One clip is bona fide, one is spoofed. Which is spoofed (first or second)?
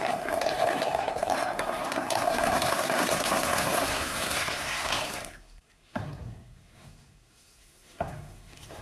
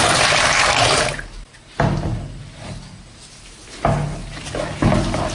first